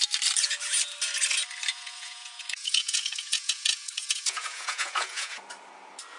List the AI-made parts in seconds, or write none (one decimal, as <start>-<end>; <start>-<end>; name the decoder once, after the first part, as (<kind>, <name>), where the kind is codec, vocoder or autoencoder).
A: 1.7-5.4 (vocoder, Vocos)